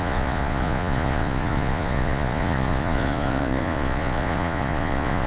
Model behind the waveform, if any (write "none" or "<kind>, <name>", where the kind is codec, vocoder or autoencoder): vocoder, Vocos